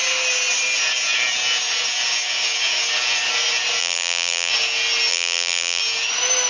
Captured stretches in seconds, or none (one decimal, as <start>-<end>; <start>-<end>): 0.0-3.8; 4.5-5.1; 5.8-6.5